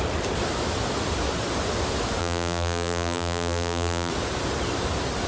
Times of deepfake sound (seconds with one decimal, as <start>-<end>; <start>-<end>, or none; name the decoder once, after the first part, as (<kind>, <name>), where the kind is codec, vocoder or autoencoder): 2.2-4.1 (vocoder, BigVGAN v2)